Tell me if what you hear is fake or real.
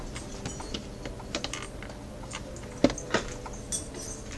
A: real